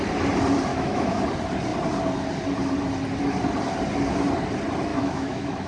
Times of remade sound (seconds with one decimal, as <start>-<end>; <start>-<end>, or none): 0.7-1.2; 4.9-5.7